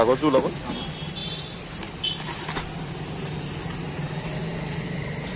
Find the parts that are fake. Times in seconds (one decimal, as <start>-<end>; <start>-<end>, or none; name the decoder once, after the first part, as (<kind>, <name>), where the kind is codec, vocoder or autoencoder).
1.2-1.7 (vocoder, BigVGAN v2); 4.4-5.4